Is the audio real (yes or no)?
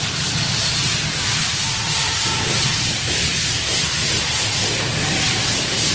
no